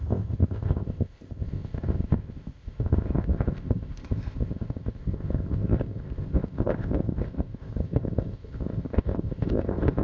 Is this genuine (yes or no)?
no